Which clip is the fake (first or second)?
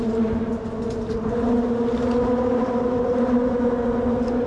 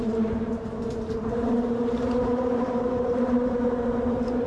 second